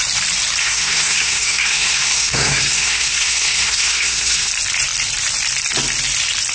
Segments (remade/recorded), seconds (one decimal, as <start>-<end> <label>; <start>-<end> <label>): 0.0-0.6 recorded; 0.6-4.5 remade; 4.5-6.5 recorded